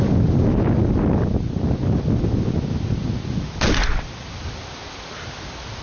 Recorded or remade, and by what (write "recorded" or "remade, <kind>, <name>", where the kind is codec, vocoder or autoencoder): recorded